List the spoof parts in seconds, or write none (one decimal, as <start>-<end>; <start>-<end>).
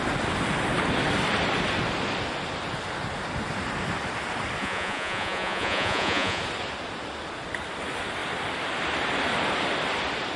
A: 4.6-6.4